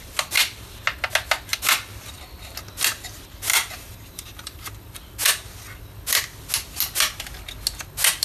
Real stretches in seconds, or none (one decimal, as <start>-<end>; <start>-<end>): 0.0-3.5; 4.6-8.2

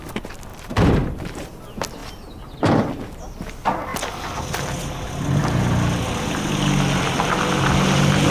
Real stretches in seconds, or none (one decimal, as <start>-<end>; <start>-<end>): 0.0-0.5; 1.6-8.3

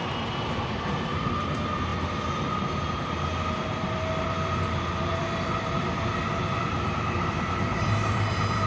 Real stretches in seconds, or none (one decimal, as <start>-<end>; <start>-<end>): 0.0-0.6